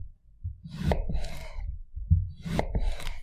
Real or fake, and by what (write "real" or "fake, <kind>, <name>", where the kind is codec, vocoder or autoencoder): fake, vocoder, BigVGAN v2